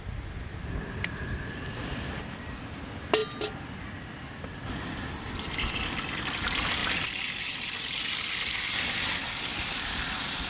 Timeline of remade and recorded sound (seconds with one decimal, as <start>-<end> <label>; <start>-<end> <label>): 0.0-10.5 recorded